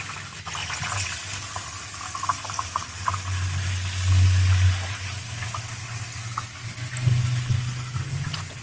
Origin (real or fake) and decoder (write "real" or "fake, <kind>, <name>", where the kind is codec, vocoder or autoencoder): real